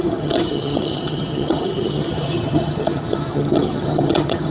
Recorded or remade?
remade